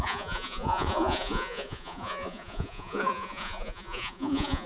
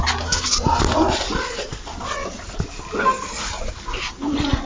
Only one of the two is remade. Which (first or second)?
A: first